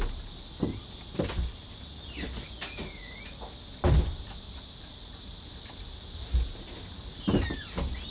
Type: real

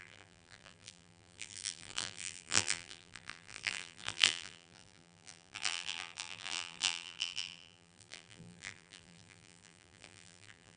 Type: fake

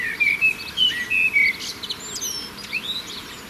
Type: real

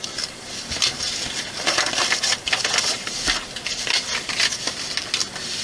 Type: real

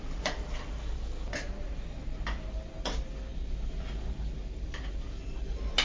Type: real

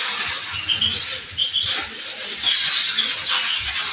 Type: real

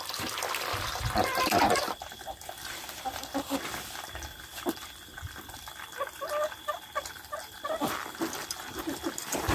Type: real